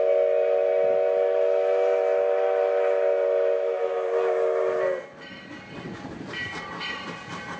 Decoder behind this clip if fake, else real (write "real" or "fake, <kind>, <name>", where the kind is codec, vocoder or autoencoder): real